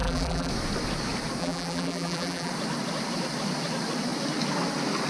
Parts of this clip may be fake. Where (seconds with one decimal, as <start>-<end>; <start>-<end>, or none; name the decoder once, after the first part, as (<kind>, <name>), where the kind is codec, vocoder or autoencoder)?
0.0-0.5 (vocoder, BigVGAN v2); 1.4-2.5